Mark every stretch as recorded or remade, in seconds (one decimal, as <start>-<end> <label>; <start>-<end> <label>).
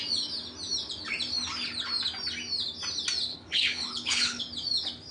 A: 0.0-3.3 recorded; 3.3-4.4 remade; 4.4-5.1 recorded